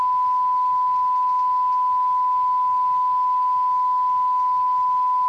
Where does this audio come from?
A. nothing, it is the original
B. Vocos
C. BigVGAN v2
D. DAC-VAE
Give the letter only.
A